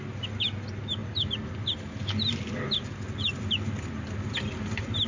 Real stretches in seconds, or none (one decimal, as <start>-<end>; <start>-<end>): 0.0-5.1